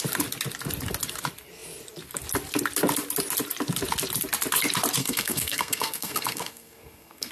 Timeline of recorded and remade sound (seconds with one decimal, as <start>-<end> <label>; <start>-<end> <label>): 0.0-5.0 recorded; 5.0-7.3 remade